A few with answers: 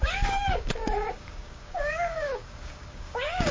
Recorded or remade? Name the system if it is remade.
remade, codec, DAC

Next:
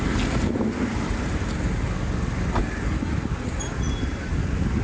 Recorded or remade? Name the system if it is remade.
recorded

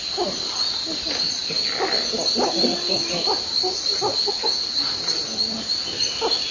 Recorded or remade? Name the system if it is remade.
recorded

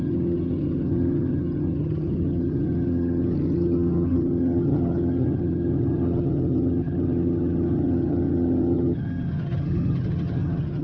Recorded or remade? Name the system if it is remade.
remade, vocoder, HiFi-GAN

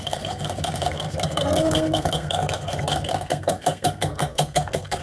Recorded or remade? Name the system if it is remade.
remade, codec, SNAC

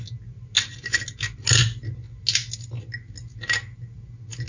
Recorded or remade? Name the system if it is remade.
recorded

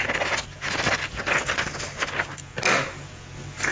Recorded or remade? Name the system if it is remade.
recorded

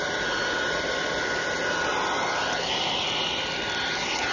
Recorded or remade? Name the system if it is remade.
recorded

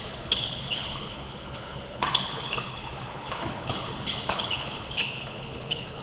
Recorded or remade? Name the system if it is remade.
remade, codec, HILCodec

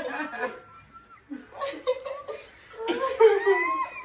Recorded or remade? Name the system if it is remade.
recorded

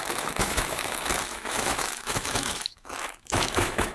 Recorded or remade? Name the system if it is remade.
remade, autoencoder, DAC-VAE